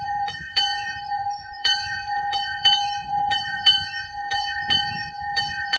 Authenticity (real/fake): fake